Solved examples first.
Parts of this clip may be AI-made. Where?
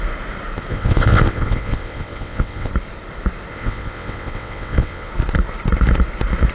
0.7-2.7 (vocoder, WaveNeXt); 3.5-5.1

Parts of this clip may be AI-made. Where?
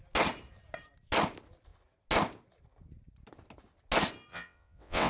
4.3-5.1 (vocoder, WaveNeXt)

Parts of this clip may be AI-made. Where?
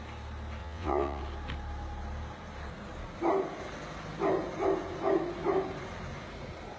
0.6-1.2 (vocoder, WaveNeXt)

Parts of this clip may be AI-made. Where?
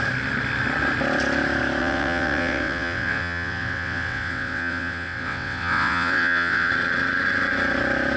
1.8-6.7 (vocoder, WaveNeXt)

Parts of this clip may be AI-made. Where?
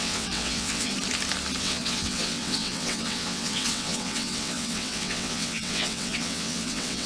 0.0-0.9 (vocoder, WaveNeXt); 1.6-7.1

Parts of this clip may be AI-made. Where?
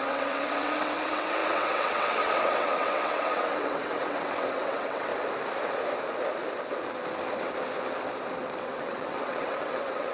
0.0-5.1 (vocoder, WaveNeXt); 8.6-10.1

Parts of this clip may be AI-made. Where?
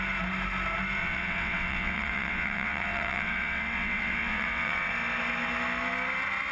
1.0-4.9 (vocoder, WaveNeXt)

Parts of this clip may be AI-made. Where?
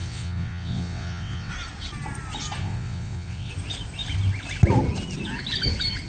0.0-1.5 (vocoder, WaveNeXt); 2.6-3.5